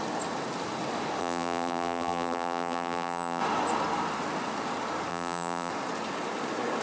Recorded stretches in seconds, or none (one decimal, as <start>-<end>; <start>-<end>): 0.0-1.2; 3.4-5.1; 5.7-6.8